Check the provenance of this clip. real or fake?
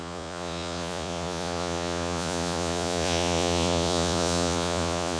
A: fake